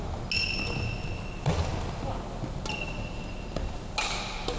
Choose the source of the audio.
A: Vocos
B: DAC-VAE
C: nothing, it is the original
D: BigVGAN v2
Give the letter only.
C